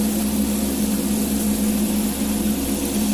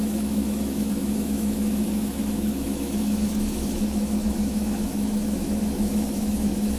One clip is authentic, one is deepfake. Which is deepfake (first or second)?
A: second